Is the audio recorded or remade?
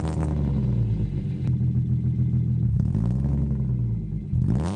recorded